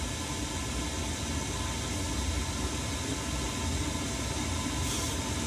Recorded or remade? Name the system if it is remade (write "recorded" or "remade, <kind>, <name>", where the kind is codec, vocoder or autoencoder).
recorded